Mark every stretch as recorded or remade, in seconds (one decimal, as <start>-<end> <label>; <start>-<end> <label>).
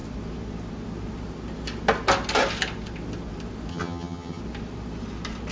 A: 0.0-3.7 recorded; 3.7-4.4 remade; 4.4-5.5 recorded